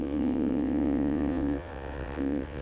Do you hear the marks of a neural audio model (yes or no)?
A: yes